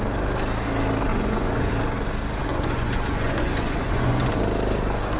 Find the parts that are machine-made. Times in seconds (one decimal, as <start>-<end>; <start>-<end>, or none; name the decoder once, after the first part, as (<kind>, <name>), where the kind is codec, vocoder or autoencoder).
1.1-1.7 (vocoder, Vocos); 2.5-4.4